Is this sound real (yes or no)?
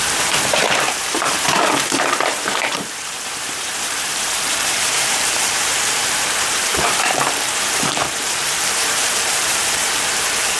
no